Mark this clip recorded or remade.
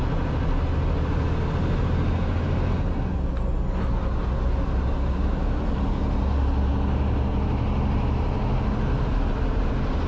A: recorded